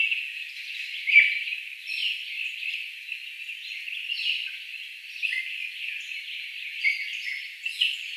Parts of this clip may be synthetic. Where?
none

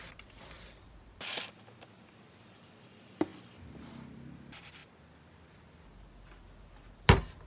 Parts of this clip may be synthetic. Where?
0.0-3.3 (vocoder, BigVGAN v2); 3.9-4.8

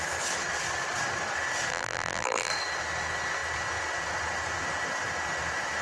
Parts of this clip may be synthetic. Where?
1.7-2.5 (vocoder, BigVGAN v2)

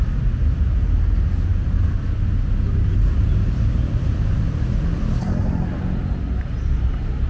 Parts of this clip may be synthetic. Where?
1.5-5.8 (vocoder, BigVGAN v2)

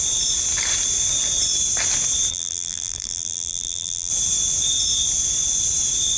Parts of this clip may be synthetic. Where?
2.3-4.1 (vocoder, BigVGAN v2)

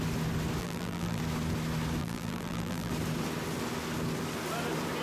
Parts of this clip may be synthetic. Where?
0.6-1.2 (vocoder, BigVGAN v2); 2.0-2.9